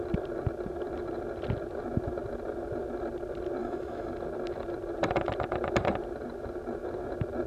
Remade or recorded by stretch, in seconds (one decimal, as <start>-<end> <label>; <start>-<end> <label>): 0.0-3.6 recorded; 3.6-4.1 remade; 4.1-7.5 recorded